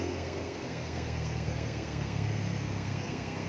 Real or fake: fake